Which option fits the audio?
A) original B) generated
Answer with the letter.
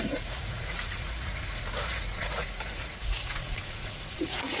B